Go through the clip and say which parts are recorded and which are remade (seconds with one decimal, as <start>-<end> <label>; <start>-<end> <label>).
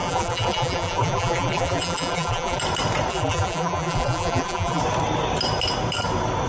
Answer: 0.0-2.6 remade; 2.6-3.1 recorded; 3.1-4.8 remade; 4.8-6.5 recorded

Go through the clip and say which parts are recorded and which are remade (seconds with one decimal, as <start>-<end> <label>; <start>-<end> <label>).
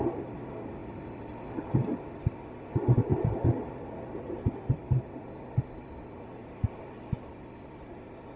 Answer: 0.0-8.4 recorded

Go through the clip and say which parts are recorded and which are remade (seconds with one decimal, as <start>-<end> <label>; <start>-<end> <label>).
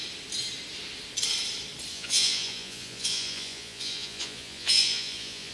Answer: 0.0-1.9 recorded; 1.9-5.5 remade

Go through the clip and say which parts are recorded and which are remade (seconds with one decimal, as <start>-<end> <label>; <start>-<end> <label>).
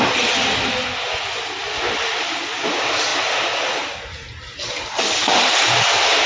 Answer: 0.0-6.3 recorded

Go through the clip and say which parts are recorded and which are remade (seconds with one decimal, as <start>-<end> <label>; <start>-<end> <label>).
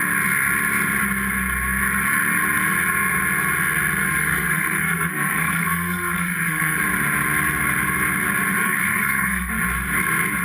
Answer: 0.0-4.0 recorded; 4.0-6.8 remade; 6.8-8.6 recorded; 8.6-9.5 remade; 9.5-10.4 recorded